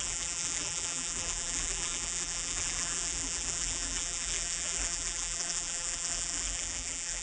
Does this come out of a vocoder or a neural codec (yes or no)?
yes